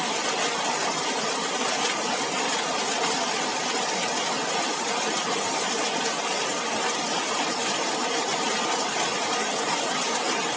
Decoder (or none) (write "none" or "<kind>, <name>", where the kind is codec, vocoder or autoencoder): none